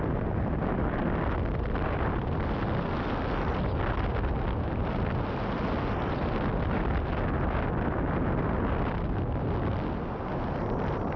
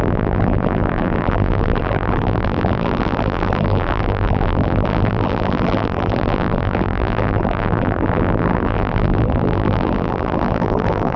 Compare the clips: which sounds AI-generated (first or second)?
second